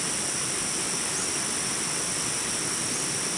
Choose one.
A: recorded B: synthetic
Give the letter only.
A